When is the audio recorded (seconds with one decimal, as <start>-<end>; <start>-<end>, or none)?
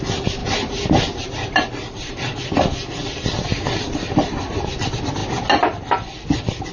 0.0-0.4; 2.4-3.5; 4.4-6.7